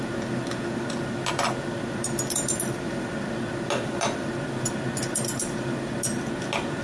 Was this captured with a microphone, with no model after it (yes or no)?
yes